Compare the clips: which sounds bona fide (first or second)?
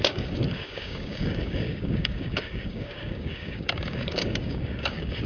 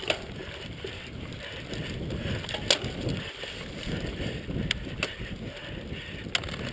second